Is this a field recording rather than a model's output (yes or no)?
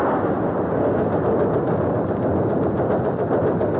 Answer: yes